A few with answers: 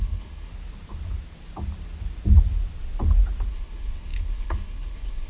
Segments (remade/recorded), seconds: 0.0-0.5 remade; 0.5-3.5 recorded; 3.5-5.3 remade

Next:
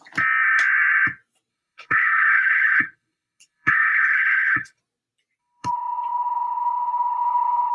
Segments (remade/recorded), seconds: 0.0-1.5 recorded; 1.5-4.8 remade; 4.8-5.4 recorded; 5.4-7.7 remade

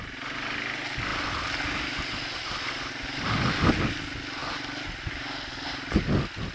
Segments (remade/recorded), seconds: 0.0-6.5 recorded